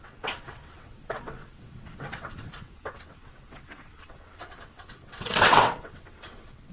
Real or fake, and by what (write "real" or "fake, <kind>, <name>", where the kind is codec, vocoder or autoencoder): fake, vocoder, WaveNeXt